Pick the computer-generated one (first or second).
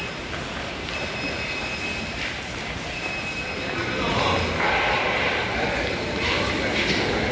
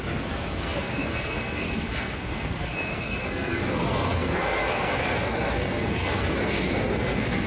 second